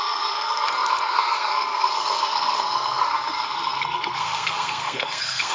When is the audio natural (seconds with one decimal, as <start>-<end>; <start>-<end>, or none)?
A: none

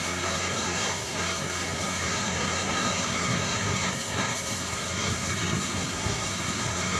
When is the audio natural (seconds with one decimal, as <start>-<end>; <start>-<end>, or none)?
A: none

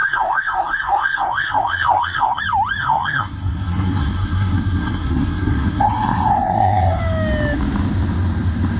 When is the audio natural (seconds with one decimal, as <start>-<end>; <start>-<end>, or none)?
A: 2.4-2.8; 7.0-8.8